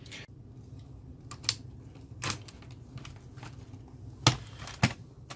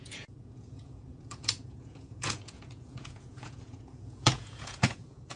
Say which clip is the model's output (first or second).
second